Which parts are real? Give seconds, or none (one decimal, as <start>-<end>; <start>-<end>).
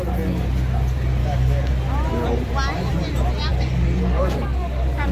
0.0-1.2; 1.7-3.5